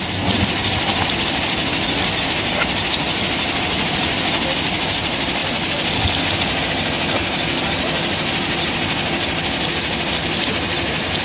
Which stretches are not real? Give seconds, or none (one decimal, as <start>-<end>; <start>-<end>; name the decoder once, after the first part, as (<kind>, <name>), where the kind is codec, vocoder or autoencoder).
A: none